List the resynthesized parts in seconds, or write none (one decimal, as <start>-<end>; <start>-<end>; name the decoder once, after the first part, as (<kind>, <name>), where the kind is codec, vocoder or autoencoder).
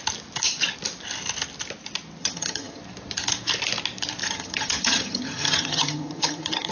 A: 2.2-2.8 (vocoder, HiFi-GAN); 4.2-6.7